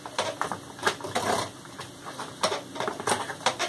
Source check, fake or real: real